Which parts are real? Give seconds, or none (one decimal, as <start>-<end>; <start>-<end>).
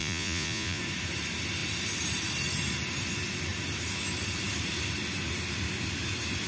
0.8-6.5